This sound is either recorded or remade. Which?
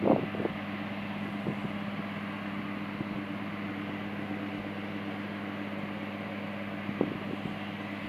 recorded